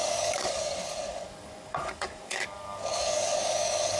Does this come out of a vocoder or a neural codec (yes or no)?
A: yes